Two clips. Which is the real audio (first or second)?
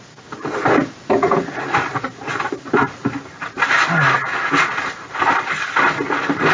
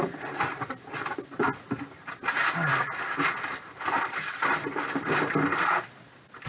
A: first